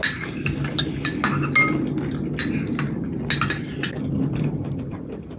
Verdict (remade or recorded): recorded